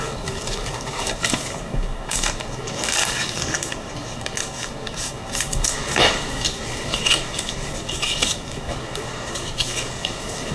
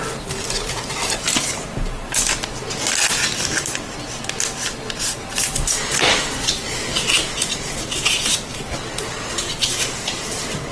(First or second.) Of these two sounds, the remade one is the first